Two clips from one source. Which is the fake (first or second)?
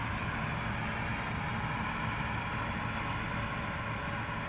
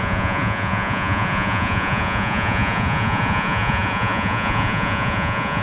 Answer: second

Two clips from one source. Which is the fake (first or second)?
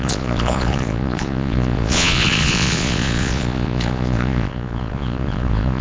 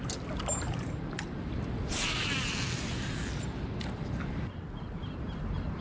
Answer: first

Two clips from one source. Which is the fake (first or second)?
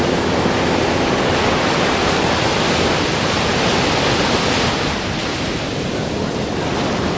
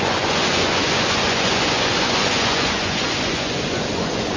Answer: second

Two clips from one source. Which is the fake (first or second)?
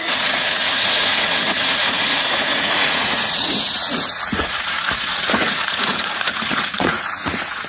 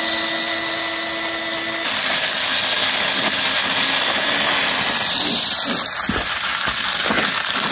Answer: first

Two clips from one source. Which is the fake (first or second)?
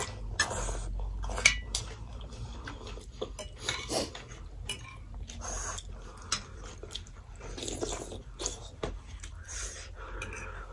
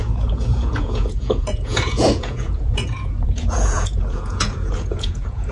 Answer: second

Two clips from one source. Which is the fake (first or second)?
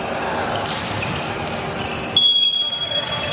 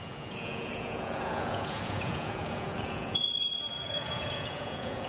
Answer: second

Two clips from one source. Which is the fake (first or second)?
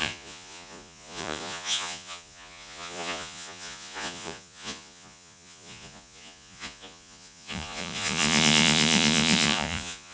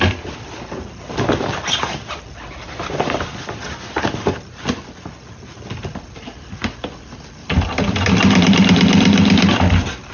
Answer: first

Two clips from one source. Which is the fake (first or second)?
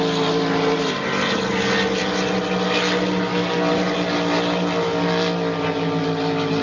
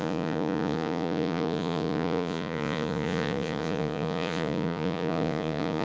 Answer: second